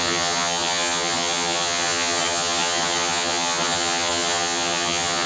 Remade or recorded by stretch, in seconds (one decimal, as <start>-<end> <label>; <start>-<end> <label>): 0.0-5.3 remade